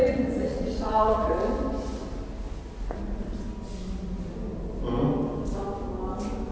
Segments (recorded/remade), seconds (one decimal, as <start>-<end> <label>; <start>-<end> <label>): 0.0-1.3 remade; 1.3-6.5 recorded